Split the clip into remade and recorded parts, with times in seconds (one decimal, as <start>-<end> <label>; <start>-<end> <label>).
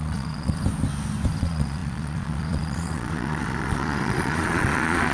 0.0-0.6 remade; 0.6-1.4 recorded; 1.4-5.1 remade